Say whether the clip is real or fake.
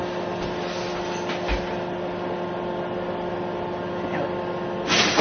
real